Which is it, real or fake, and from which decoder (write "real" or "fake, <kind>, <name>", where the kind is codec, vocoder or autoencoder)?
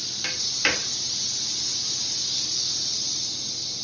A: real